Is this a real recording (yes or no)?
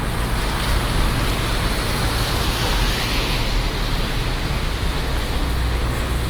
yes